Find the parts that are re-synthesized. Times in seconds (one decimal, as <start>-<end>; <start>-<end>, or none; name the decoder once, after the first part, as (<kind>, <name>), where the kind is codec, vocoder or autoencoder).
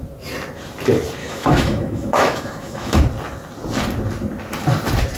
1.2-3.0 (autoencoder, DAC-VAE)